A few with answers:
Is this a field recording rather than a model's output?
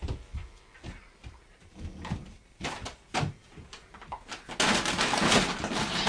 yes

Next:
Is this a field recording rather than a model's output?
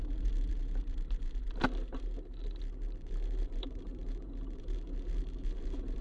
no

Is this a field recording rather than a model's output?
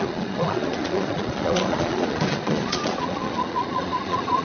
no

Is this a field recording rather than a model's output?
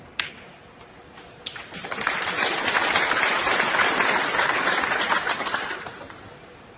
no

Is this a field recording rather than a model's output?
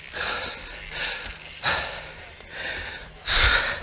yes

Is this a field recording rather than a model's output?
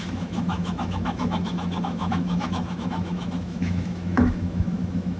no